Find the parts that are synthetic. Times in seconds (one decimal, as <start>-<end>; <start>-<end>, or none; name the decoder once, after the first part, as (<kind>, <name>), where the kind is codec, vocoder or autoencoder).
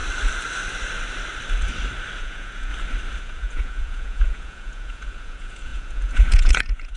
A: 2.2-2.7 (vocoder, Vocos); 3.2-7.0